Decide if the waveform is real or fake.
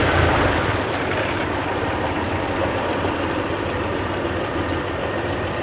fake